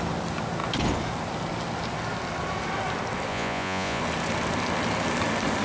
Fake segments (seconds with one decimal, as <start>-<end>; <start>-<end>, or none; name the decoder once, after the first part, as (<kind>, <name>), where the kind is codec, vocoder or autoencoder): 3.3-4.0 (vocoder, Vocos)